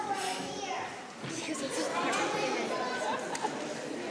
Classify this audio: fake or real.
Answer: real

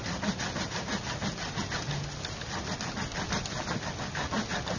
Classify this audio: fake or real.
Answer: real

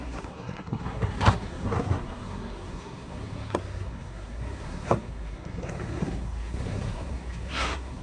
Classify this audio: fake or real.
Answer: fake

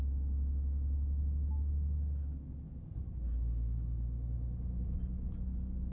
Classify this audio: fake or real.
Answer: real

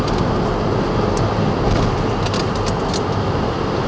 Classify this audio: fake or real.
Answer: real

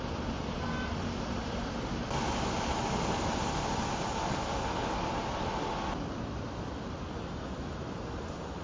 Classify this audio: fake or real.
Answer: real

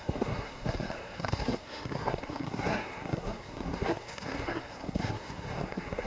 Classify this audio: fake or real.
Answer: fake